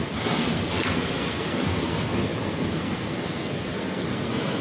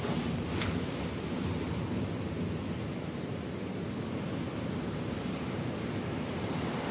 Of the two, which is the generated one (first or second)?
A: first